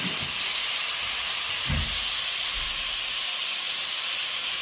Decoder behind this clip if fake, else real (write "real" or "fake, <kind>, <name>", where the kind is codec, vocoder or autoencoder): real